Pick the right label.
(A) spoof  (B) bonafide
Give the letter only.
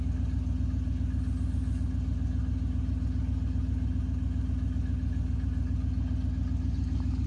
B